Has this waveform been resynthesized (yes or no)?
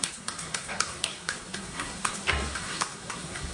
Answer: yes